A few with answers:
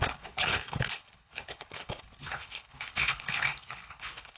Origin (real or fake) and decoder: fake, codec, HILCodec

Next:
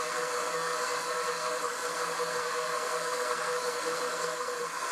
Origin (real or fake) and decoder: fake, codec, SNAC